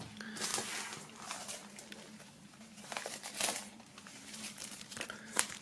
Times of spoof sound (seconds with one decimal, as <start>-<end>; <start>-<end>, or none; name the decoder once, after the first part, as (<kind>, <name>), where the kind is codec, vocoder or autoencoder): 0.0-0.5 (vocoder, BigVGAN v2); 1.0-1.6; 2.3-5.6